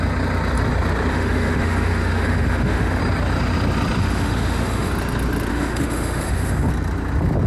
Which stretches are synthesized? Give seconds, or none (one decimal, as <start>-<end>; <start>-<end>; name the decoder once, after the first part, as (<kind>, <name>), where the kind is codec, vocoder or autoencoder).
1.1-3.0 (autoencoder, DAC-VAE); 4.0-4.9; 5.5-6.7

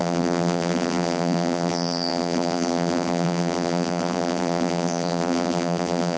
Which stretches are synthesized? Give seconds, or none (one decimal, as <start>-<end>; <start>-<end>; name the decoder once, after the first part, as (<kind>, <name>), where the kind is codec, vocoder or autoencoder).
0.0-6.2 (vocoder, BigVGAN v2)

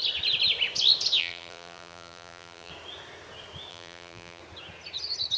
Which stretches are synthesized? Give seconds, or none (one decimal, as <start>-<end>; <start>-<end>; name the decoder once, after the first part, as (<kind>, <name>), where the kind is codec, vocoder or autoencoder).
1.2-2.7 (vocoder, BigVGAN v2); 3.7-4.4

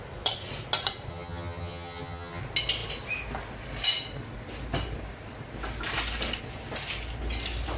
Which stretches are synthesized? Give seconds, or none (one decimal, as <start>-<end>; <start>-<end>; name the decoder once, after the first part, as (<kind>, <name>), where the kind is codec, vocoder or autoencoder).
1.1-2.4 (vocoder, HiFi-GAN)

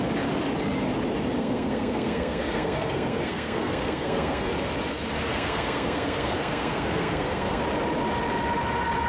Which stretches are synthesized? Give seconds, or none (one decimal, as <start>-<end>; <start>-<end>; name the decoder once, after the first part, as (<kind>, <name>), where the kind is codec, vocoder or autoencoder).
1.4-4.5 (codec, SNAC); 5.3-7.6